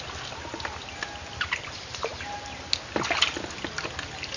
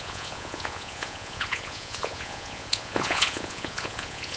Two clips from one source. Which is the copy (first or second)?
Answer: second